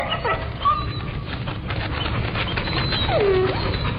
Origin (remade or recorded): recorded